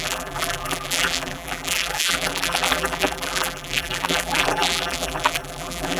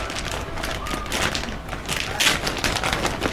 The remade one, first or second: first